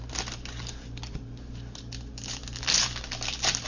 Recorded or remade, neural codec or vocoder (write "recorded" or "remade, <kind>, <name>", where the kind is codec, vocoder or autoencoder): recorded